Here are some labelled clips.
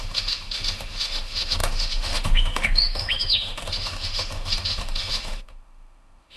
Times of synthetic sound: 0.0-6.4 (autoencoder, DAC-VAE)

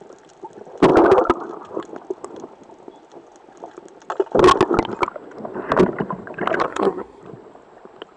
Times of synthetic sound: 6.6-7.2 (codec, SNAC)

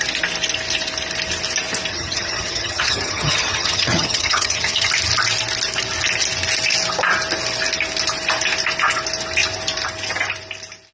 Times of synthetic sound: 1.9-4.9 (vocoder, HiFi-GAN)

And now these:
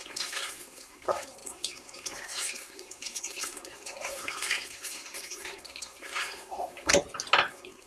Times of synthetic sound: 0.0-6.9 (codec, SNAC); 7.5-7.9

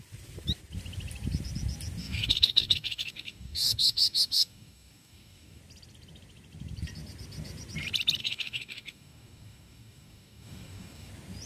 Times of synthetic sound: 2.0-5.6 (codec, DAC); 8.2-11.1